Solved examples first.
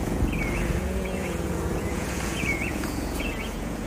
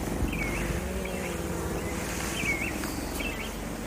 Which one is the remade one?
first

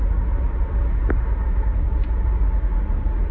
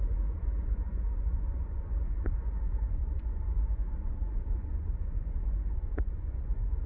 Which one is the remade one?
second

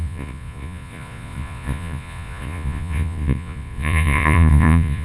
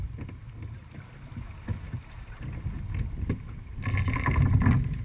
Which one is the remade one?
first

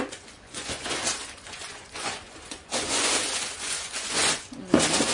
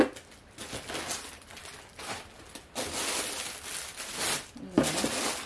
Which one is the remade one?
first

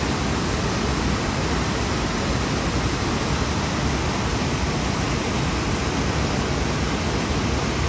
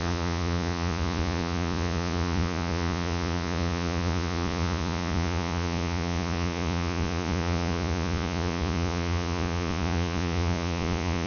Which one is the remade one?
second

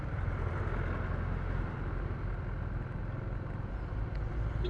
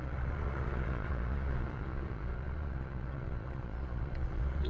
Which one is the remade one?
second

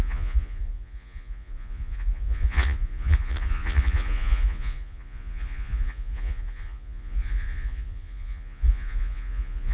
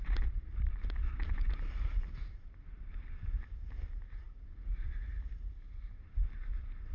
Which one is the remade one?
first